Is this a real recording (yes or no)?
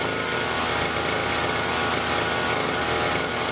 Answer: yes